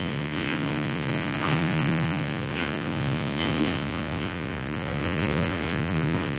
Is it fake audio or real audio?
fake